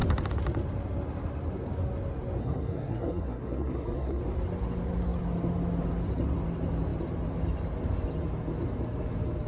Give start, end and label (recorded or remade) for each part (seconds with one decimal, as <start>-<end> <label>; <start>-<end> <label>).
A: 0.0-2.4 recorded; 2.4-4.2 remade; 4.2-9.5 recorded